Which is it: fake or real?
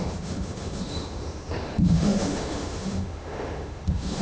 fake